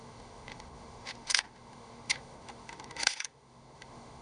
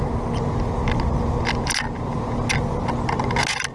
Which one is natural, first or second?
second